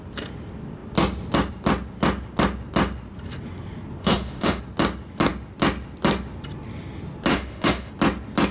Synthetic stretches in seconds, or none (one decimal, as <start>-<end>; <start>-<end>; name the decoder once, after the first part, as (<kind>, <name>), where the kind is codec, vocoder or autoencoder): 4.0-4.6 (autoencoder, DAC-VAE); 7.3-7.9